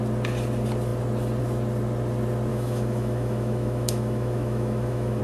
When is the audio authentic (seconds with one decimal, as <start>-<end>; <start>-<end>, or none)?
0.0-2.5